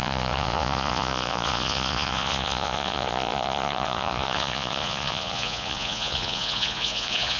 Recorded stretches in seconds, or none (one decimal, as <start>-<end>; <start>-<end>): none

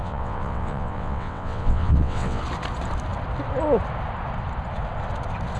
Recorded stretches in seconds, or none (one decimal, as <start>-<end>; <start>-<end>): 2.4-5.6

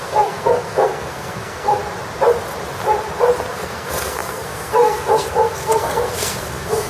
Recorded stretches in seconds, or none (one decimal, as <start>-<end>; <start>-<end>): 1.8-3.5

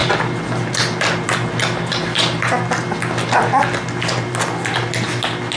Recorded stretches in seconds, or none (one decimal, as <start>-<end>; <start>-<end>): 0.0-5.6

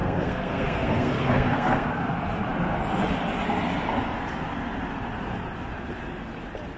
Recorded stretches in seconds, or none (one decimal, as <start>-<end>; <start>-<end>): 2.0-6.8